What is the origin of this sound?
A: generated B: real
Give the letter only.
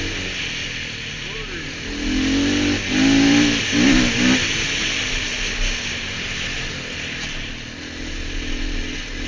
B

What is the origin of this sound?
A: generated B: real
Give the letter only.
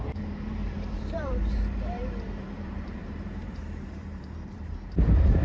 A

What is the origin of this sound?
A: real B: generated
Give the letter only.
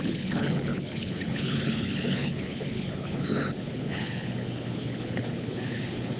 B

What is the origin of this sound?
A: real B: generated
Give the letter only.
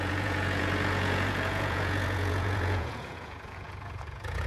B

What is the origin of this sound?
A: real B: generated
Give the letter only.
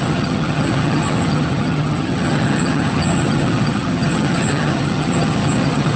B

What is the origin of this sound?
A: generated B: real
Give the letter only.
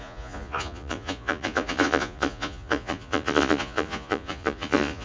A